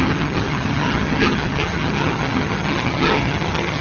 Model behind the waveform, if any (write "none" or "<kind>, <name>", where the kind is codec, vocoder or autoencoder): vocoder, HiFi-GAN